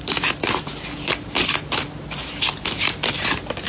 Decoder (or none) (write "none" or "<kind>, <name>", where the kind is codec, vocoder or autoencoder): none